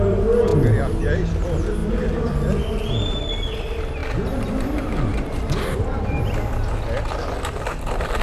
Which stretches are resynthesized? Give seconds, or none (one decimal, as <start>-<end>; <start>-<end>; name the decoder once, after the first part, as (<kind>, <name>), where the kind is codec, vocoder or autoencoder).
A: none